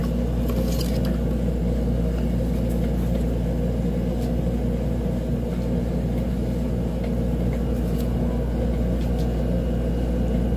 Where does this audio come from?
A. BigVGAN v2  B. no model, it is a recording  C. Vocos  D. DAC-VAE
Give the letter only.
B